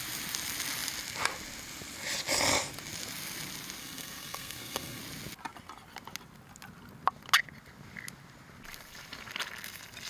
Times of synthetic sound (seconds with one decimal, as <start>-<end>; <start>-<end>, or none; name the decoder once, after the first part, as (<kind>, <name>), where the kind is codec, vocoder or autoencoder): 3.8-5.0 (codec, SNAC)